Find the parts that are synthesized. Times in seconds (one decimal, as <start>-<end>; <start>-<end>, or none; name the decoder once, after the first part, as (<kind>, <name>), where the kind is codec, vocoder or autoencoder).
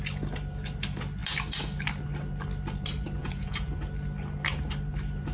3.2-3.7 (vocoder, Vocos)